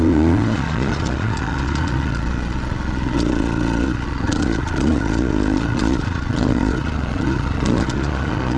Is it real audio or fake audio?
fake